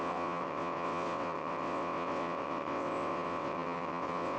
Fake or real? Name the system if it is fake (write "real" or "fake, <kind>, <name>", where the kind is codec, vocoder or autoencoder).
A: fake, vocoder, WaveNeXt